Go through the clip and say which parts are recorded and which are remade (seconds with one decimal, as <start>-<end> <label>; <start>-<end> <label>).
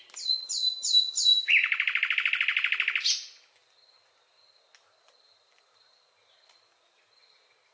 0.0-7.7 recorded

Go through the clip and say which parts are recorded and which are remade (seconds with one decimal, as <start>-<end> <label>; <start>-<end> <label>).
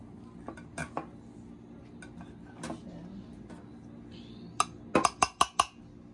0.0-6.1 recorded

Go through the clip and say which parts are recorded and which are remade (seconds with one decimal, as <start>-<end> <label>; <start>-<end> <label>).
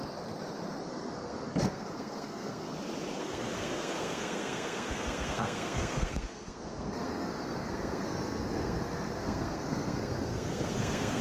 0.0-0.9 recorded; 0.9-2.7 remade; 2.7-3.2 recorded; 3.2-11.2 remade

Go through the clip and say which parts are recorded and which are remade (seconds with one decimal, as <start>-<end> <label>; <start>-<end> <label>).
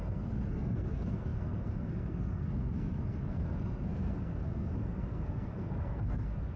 0.0-6.6 remade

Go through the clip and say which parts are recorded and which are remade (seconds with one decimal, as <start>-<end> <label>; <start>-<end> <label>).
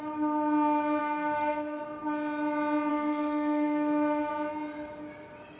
0.0-1.0 recorded; 1.0-1.8 remade; 1.8-2.9 recorded; 2.9-4.3 remade; 4.3-5.6 recorded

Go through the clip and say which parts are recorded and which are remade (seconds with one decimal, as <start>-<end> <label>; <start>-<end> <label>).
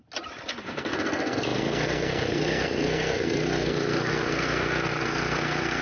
0.0-0.6 recorded; 0.6-5.8 remade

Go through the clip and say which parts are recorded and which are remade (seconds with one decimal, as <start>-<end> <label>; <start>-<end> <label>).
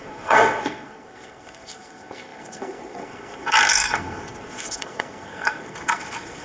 0.0-6.4 remade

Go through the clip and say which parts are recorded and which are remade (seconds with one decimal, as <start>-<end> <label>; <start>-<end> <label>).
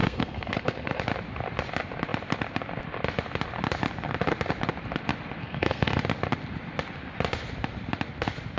0.0-1.0 remade; 1.0-5.4 recorded; 5.4-6.0 remade; 6.0-8.6 recorded